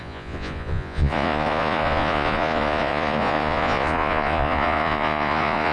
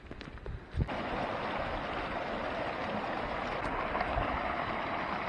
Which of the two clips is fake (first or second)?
first